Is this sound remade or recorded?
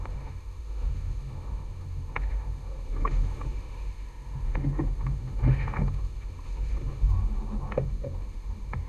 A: remade